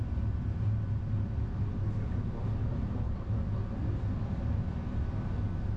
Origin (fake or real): real